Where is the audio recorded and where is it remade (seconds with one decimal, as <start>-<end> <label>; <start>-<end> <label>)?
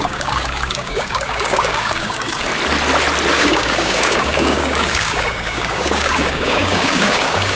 0.0-2.5 remade; 2.5-3.3 recorded; 3.3-7.6 remade